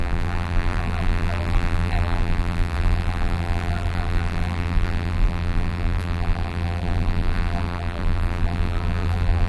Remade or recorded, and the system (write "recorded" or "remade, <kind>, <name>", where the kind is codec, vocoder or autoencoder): remade, vocoder, BigVGAN v2